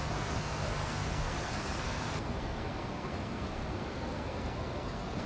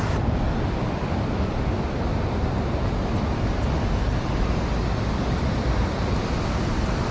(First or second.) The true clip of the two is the second